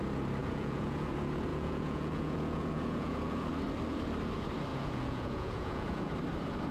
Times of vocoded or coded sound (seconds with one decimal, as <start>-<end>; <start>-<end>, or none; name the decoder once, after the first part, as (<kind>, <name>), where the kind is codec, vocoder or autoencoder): 0.4-1.1 (vocoder, Vocos); 1.5-3.5; 4.7-6.1